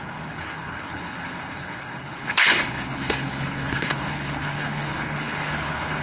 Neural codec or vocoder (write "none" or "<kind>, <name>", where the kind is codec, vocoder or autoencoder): codec, HILCodec